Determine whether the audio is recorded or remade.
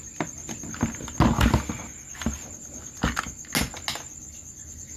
recorded